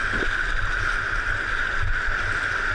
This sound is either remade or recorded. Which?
recorded